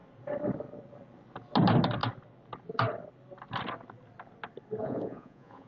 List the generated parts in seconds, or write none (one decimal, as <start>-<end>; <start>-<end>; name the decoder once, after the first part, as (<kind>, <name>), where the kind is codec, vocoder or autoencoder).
4.8-5.7 (vocoder, Vocos)